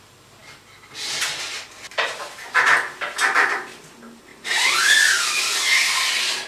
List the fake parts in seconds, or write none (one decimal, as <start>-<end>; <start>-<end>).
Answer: 4.3-6.0